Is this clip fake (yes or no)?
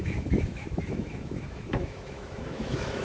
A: yes